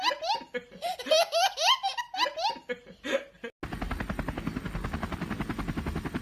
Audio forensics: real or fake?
real